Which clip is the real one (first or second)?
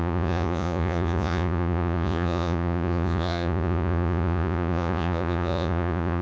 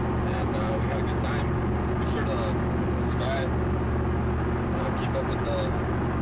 second